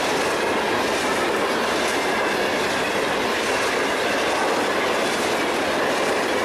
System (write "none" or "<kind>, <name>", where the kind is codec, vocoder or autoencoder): none